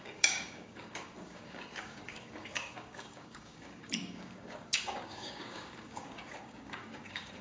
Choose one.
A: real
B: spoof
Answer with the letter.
B